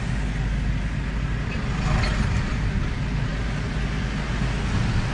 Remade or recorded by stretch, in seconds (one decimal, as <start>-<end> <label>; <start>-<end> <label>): 0.0-5.1 recorded

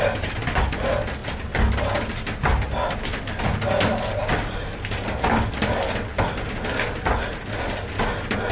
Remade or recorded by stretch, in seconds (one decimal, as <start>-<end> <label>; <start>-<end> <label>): 0.0-8.5 recorded